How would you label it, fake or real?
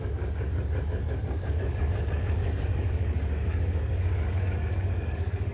fake